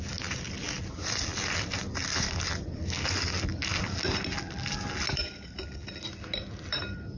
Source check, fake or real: real